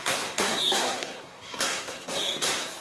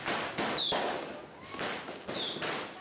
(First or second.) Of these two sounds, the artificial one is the first